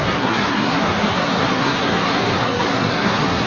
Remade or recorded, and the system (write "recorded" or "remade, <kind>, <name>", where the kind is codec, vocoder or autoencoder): remade, codec, SNAC